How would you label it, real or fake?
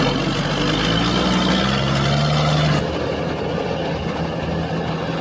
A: real